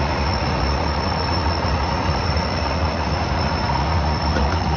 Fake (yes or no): yes